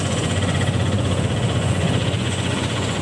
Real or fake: fake